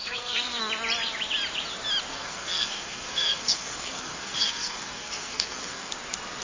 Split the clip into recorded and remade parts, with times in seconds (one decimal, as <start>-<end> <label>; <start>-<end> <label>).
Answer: 0.0-0.6 remade; 0.6-2.1 recorded; 2.1-5.9 remade; 5.9-6.4 recorded